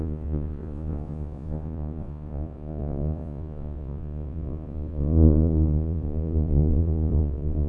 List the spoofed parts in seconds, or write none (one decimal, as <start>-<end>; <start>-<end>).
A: 0.0-7.7